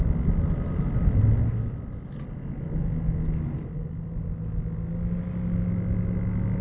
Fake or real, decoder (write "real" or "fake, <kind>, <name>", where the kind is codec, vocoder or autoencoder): real